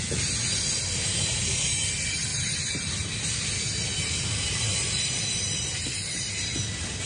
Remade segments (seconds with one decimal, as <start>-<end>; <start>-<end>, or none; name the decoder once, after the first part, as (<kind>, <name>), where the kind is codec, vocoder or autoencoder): none